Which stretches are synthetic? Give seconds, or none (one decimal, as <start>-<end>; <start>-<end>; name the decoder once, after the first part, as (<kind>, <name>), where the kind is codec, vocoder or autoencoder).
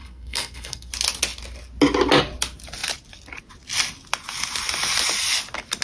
0.0-0.9 (codec, SNAC)